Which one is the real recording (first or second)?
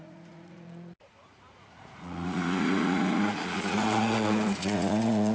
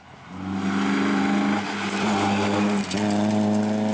second